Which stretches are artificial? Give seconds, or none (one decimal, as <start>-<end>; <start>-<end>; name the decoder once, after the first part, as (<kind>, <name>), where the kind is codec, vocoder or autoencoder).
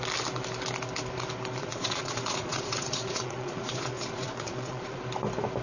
1.6-5.0 (vocoder, Vocos)